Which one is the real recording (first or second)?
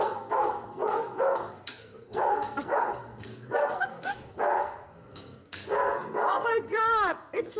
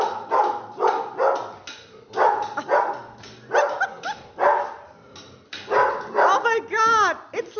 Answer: second